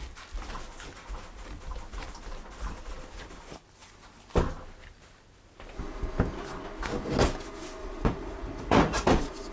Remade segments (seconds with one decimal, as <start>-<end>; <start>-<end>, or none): 7.8-9.5